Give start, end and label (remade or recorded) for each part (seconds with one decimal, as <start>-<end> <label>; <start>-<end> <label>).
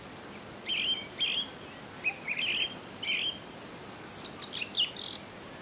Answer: 0.0-5.6 recorded